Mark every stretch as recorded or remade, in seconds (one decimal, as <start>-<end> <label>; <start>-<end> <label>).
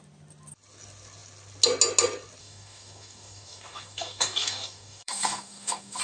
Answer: 0.0-2.4 recorded; 2.4-6.0 remade